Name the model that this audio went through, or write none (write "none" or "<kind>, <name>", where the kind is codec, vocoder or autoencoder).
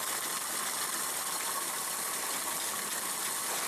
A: none